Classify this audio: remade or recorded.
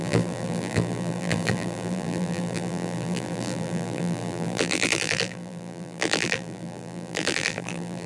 remade